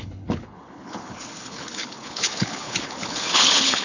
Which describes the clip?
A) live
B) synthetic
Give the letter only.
B